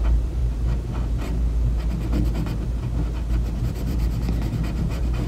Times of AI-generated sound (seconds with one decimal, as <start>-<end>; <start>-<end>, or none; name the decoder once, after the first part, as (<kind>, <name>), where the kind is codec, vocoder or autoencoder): 0.0-0.4 (vocoder, BigVGAN v2); 3.6-5.3